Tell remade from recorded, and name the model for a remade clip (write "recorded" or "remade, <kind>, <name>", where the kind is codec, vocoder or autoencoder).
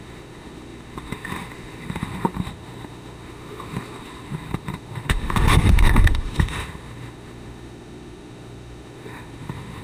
remade, autoencoder, DAC-VAE